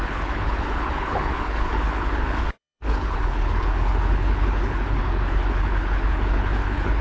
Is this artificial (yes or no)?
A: yes